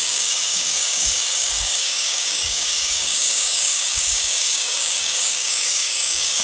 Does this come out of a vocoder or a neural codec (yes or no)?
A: yes